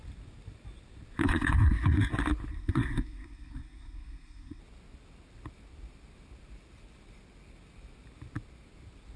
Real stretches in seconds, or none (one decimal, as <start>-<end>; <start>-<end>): 0.0-1.2; 2.1-2.5; 4.6-9.2